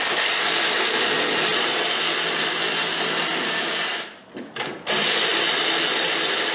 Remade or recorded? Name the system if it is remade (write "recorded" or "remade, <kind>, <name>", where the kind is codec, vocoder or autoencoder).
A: recorded